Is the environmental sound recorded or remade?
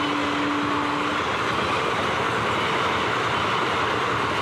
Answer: recorded